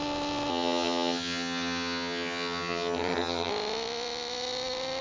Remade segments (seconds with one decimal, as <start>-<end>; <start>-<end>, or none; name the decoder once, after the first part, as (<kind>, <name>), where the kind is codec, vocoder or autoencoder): 0.5-3.5 (vocoder, HiFi-GAN)